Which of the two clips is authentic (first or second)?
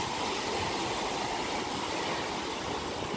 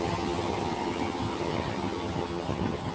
first